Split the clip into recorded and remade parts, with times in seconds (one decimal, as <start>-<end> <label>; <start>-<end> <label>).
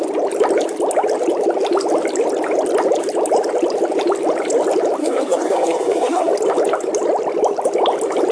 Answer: 0.0-5.0 recorded; 5.0-6.3 remade; 6.3-8.3 recorded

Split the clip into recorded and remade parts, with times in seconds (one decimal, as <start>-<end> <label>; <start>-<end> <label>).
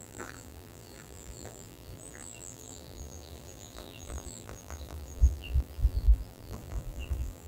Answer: 0.0-7.5 remade